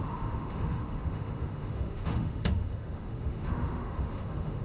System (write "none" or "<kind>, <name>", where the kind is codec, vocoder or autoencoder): autoencoder, DAC-VAE